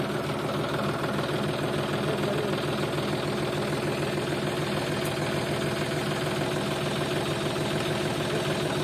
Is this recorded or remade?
recorded